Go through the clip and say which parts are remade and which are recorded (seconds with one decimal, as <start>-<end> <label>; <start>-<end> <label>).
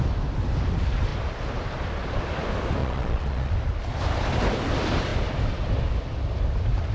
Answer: 0.0-2.8 recorded; 2.8-3.5 remade; 3.5-6.9 recorded